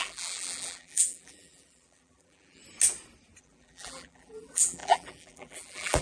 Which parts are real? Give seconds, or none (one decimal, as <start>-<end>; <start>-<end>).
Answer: 2.6-3.4